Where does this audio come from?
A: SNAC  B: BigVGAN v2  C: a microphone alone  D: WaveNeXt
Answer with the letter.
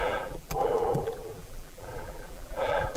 B